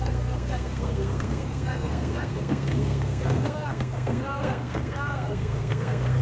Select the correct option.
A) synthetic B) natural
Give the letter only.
A